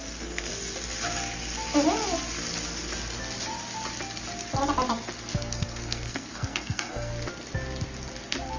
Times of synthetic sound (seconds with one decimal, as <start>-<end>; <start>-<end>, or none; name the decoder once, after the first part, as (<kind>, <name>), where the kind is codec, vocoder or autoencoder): 0.0-0.5 (codec, SNAC); 5.3-7.1